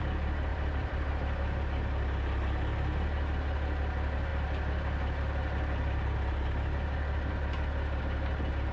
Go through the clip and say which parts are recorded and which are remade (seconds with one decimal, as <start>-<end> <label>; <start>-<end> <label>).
0.0-0.5 recorded; 0.5-1.1 remade; 1.1-8.7 recorded